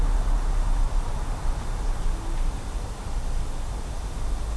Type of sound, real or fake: real